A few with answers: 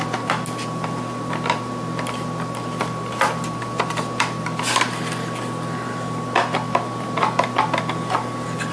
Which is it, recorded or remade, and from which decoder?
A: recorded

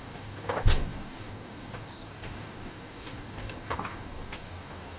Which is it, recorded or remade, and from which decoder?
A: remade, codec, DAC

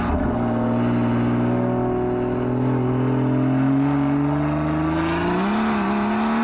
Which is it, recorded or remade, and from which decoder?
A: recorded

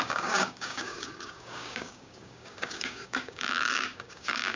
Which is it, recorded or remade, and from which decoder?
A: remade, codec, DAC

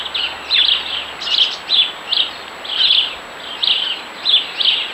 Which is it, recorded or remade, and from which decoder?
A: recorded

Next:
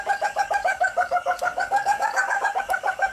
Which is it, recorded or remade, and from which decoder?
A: remade, codec, DAC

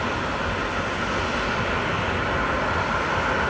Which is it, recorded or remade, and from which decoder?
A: recorded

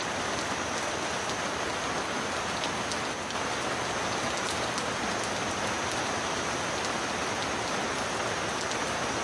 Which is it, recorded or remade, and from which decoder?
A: recorded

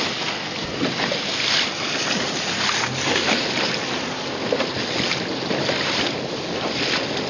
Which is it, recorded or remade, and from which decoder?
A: recorded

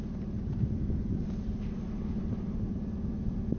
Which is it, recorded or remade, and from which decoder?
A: recorded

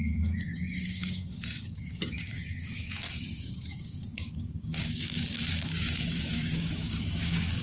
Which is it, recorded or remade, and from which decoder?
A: remade, codec, DAC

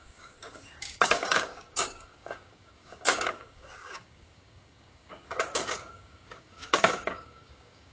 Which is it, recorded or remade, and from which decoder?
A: remade, codec, DAC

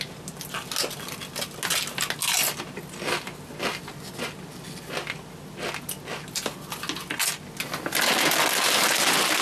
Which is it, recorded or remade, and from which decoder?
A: recorded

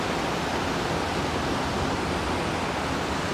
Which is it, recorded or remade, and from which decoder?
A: recorded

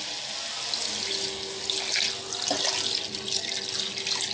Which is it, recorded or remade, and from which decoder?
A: recorded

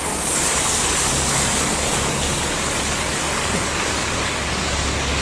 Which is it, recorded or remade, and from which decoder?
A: remade, codec, DAC